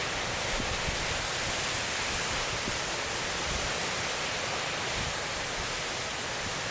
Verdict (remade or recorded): recorded